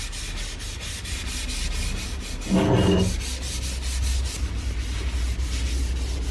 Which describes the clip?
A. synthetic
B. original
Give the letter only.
B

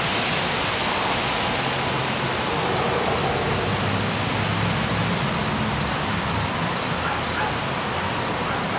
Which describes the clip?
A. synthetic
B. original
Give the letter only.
B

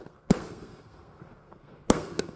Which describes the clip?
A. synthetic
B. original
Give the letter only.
A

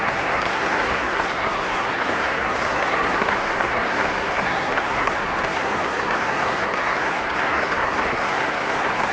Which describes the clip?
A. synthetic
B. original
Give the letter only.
A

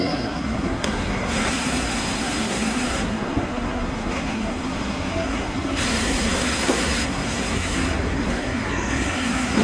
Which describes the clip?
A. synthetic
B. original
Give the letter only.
A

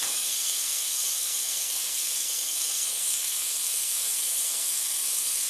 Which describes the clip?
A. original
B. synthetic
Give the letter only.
B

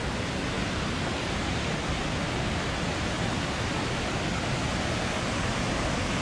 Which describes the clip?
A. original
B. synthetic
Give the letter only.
A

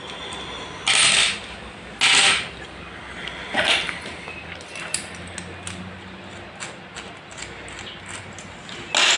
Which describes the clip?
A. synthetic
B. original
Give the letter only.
B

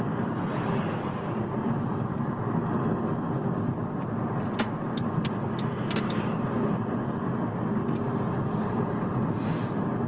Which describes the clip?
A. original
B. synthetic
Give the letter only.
A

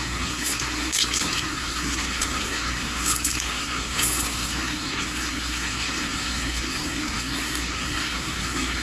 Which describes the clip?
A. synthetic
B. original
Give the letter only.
A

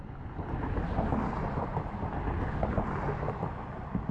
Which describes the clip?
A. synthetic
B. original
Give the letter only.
B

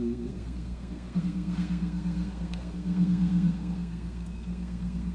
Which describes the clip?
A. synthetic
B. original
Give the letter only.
A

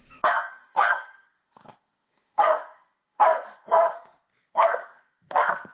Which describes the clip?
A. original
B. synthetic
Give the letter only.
B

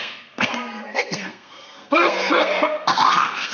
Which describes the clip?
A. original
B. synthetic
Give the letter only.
B